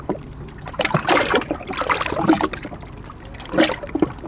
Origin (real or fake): real